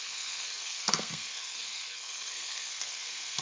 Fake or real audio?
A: fake